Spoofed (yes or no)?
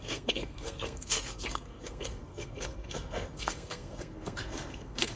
yes